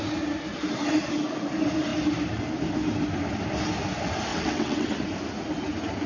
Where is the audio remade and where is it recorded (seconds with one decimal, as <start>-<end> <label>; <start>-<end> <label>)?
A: 0.0-4.3 recorded; 4.3-4.9 remade; 4.9-6.1 recorded